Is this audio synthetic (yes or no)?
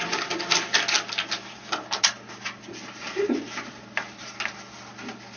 no